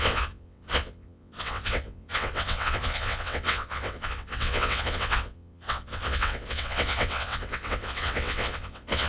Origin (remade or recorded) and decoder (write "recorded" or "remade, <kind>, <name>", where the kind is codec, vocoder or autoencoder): remade, vocoder, WaveNeXt